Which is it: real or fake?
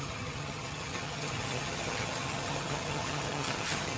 fake